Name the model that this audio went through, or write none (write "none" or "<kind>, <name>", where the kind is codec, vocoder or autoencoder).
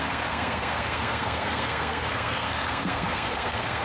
codec, SNAC